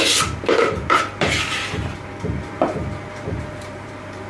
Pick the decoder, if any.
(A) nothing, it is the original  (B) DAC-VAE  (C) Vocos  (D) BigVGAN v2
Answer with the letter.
D